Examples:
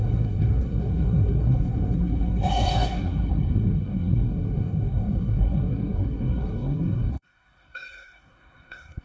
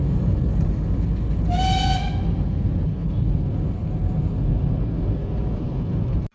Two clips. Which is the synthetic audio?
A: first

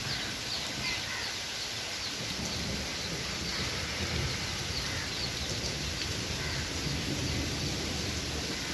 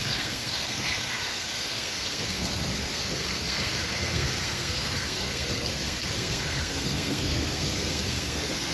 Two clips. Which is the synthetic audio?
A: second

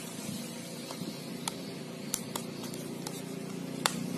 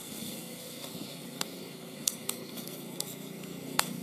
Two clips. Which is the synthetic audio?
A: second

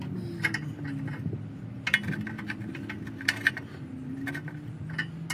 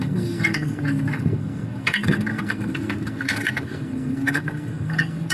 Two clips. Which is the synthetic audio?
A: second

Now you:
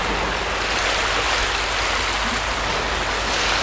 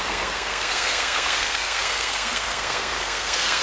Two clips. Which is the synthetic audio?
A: second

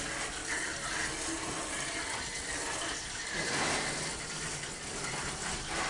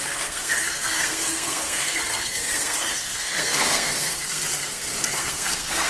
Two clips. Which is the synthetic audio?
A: second